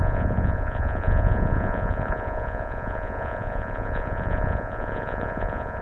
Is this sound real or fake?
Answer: fake